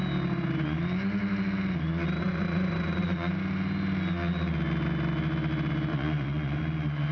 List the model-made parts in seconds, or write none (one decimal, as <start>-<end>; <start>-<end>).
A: 2.2-3.3; 5.9-6.6